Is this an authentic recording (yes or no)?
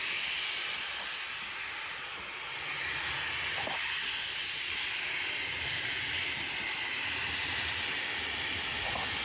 yes